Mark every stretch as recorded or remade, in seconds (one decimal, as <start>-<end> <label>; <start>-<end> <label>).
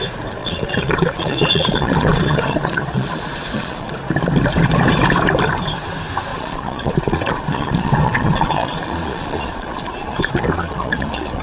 0.0-0.4 recorded; 0.4-3.9 remade; 3.9-6.3 recorded; 6.3-11.4 remade